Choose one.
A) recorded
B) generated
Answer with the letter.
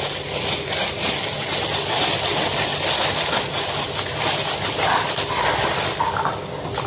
A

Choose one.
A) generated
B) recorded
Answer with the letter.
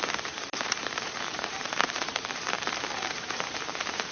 A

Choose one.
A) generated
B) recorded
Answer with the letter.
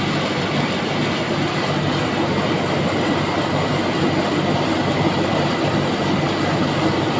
B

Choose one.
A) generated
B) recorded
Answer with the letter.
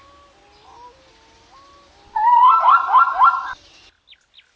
B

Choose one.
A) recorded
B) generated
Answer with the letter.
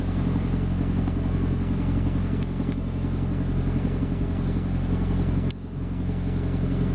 B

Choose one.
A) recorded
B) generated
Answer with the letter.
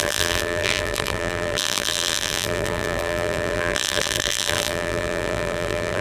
B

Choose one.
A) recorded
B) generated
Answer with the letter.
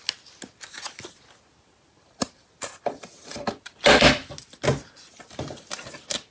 A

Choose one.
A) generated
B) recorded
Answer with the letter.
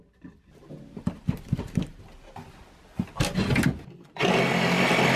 B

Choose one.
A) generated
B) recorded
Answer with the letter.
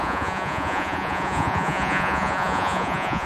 A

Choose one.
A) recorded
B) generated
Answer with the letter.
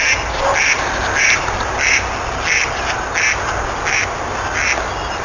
A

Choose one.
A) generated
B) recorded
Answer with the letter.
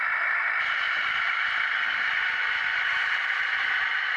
B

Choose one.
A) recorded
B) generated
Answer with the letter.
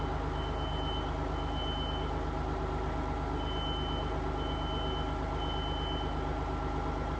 A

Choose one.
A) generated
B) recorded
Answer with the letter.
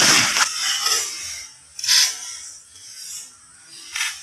B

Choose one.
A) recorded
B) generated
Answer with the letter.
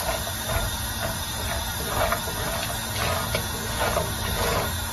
A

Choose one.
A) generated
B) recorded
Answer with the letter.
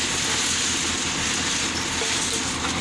B